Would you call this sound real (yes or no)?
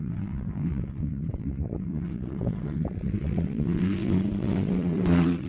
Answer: no